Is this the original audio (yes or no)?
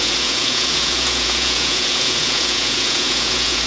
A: no